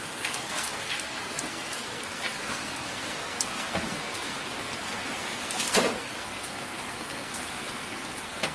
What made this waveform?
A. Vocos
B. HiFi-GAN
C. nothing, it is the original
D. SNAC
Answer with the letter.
D